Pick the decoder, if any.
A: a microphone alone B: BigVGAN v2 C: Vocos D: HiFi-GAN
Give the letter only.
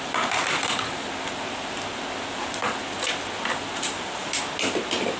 A